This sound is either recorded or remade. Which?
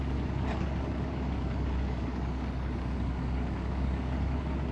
remade